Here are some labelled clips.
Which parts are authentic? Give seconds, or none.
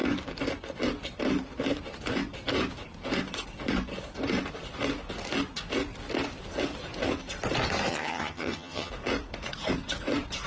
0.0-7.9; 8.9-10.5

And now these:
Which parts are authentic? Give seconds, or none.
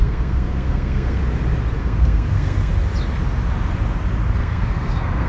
1.2-1.8; 2.7-4.4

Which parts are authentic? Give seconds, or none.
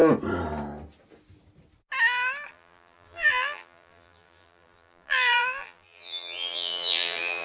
0.0-2.5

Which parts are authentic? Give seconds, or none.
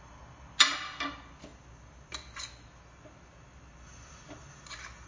0.0-5.1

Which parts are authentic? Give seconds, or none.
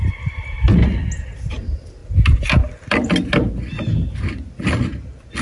0.0-5.4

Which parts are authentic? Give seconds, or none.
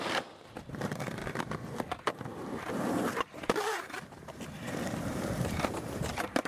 1.2-2.4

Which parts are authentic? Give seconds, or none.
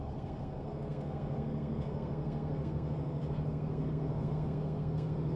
none